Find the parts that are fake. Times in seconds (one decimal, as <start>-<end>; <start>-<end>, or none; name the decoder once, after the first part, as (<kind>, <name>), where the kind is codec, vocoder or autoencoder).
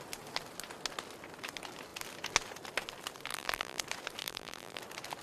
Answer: 3.3-3.8 (vocoder, BigVGAN v2); 4.2-4.8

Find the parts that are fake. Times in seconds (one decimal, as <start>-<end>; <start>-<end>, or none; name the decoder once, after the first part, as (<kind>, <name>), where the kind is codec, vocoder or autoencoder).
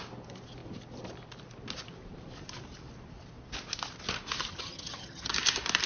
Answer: 4.5-5.3 (vocoder, HiFi-GAN)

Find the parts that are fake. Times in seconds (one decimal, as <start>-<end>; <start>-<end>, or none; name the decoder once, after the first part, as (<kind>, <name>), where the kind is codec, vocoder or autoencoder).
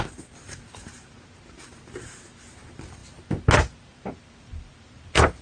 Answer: 0.0-3.0 (vocoder, BigVGAN v2); 4.1-5.4